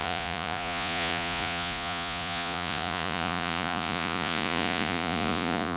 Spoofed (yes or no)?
yes